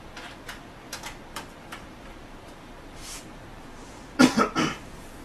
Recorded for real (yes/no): no